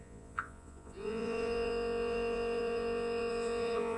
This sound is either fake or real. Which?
fake